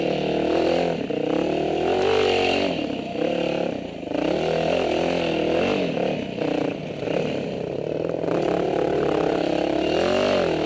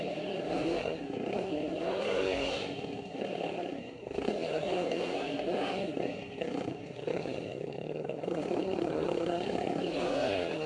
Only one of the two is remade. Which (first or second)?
second